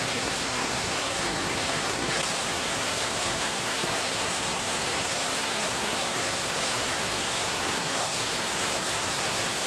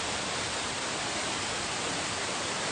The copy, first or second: first